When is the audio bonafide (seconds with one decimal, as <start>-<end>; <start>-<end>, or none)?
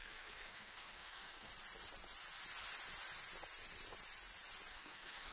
1.5-4.7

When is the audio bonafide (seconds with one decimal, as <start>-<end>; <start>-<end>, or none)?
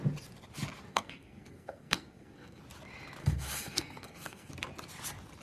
0.0-0.9; 2.6-3.2; 4.5-5.4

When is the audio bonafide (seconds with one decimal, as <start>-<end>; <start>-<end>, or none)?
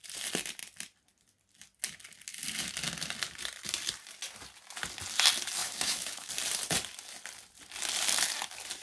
0.0-5.6; 6.3-8.8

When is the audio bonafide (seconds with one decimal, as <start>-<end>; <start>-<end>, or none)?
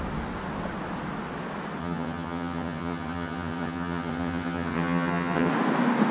0.0-1.8; 5.5-6.1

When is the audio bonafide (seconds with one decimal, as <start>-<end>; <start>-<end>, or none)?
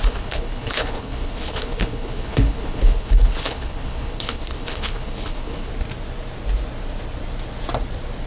5.7-8.3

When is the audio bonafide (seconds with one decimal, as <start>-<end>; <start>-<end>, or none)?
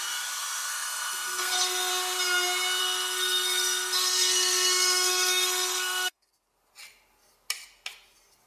0.0-0.7; 1.9-2.8; 6.3-8.5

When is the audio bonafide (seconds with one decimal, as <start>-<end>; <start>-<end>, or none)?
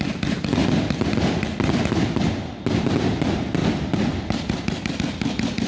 0.0-5.7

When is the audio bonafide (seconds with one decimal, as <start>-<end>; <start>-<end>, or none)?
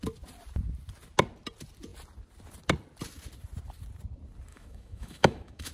0.0-4.5